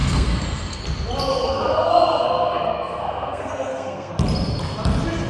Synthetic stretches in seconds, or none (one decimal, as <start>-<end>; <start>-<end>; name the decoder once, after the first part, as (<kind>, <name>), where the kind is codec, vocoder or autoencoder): 0.0-0.8 (codec, SNAC); 1.3-4.1